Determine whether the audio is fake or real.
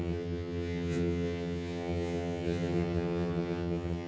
fake